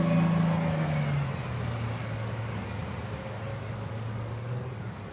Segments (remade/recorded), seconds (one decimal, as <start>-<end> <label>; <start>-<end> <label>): 0.0-2.0 recorded; 2.0-2.8 remade; 2.8-3.5 recorded; 3.5-5.1 remade